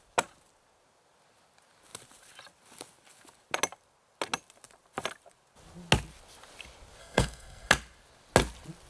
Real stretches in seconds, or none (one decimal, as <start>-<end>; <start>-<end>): 0.0-7.0; 7.7-8.9